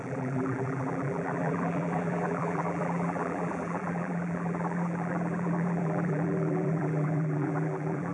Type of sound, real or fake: fake